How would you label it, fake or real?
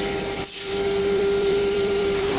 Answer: fake